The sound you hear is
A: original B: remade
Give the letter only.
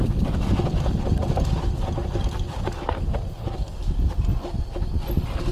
A